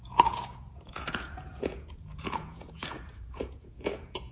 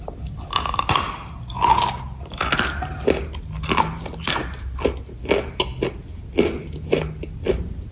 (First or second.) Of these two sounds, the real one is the second